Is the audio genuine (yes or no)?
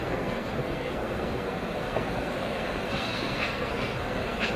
no